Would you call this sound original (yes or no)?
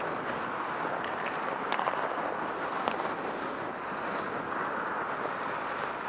yes